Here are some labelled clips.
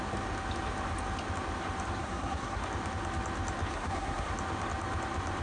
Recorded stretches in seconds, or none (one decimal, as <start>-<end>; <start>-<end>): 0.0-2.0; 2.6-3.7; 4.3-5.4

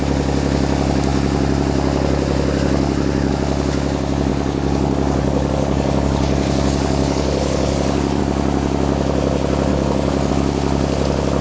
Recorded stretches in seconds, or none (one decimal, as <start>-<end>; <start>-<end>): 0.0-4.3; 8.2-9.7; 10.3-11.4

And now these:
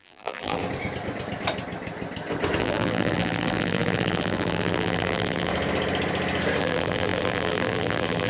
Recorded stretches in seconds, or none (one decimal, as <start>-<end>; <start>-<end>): 0.6-2.6; 5.5-6.6

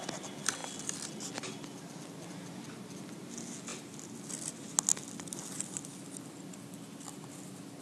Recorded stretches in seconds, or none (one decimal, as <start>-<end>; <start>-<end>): 0.0-7.8

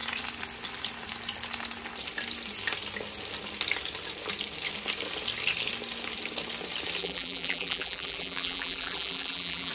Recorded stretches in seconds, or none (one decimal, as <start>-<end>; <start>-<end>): 0.0-7.0

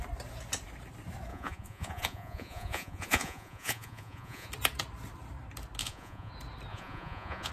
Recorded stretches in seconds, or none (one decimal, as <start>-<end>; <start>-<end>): 0.0-1.3; 4.5-5.8; 6.3-6.7

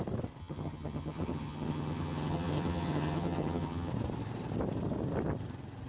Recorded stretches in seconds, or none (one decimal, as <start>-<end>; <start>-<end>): 0.0-0.4; 3.9-5.9